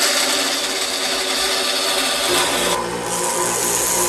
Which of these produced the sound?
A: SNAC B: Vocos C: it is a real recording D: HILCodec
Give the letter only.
C